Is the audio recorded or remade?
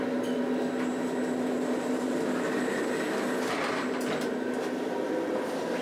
recorded